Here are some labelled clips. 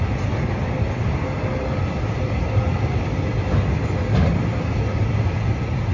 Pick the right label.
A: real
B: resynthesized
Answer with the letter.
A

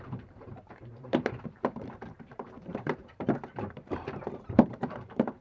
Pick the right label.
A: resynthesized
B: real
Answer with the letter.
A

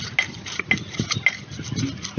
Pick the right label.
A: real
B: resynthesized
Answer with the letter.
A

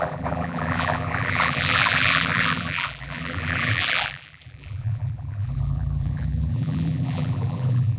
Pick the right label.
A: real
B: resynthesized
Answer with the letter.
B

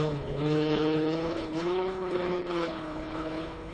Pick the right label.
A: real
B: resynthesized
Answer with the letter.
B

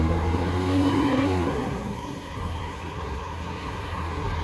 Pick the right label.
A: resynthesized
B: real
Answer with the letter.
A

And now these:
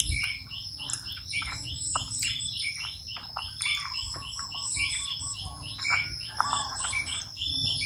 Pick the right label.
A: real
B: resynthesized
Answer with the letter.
A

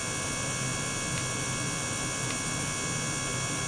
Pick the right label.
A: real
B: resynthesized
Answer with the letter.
A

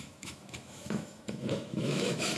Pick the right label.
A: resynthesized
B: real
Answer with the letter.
A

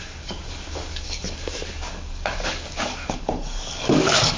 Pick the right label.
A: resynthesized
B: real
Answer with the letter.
A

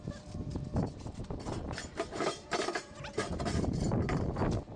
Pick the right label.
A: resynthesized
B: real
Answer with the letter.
A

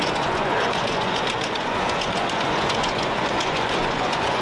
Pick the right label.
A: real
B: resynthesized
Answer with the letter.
B